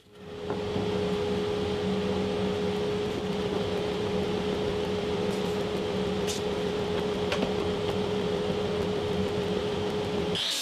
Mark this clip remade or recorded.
recorded